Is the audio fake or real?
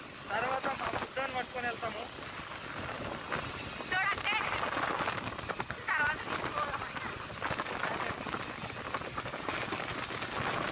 real